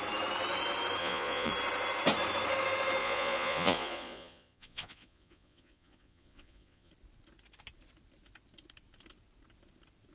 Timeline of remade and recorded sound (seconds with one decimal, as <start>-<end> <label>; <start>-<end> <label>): 0.0-1.0 recorded; 1.0-1.5 remade; 1.5-3.0 recorded; 3.0-6.9 remade; 6.9-10.1 recorded